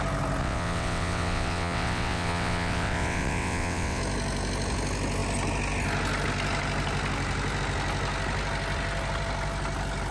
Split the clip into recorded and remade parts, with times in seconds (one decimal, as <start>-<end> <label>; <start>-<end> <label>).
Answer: 0.0-0.4 recorded; 0.4-4.0 remade; 4.0-10.1 recorded